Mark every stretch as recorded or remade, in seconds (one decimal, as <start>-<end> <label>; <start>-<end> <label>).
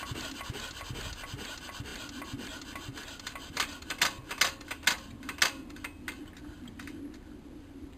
0.0-8.0 recorded